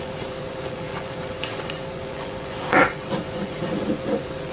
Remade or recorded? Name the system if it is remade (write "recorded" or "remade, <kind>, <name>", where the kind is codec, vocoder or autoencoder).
remade, vocoder, Vocos